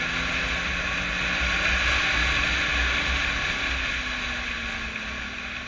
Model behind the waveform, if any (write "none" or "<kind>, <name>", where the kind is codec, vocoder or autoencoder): none